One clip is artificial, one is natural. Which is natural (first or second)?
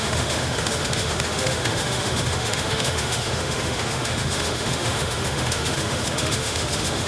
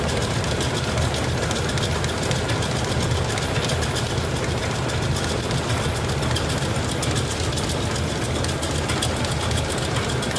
second